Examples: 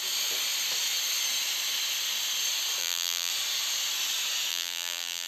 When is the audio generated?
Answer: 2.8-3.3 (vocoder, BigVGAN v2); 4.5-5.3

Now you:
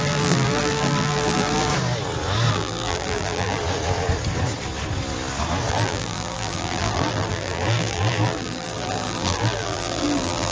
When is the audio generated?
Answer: 0.0-1.7 (vocoder, BigVGAN v2); 2.5-3.6; 5.7-10.5

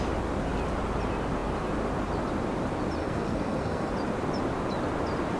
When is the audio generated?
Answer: 3.0-3.9 (codec, SNAC)

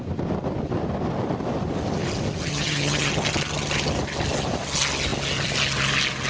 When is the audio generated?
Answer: 2.5-3.1 (vocoder, HiFi-GAN)

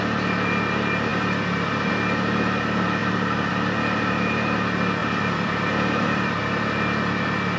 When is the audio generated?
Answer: 1.1-1.9 (vocoder, BigVGAN v2); 3.0-3.5; 5.0-6.4

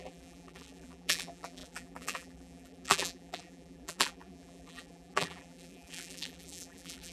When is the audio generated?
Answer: 0.0-7.1 (vocoder, BigVGAN v2)

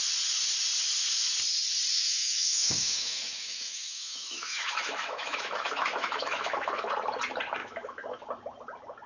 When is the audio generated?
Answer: 1.9-6.9 (autoencoder, DAC-VAE); 7.6-8.2